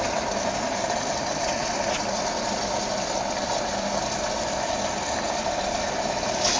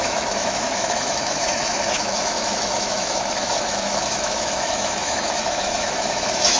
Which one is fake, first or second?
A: second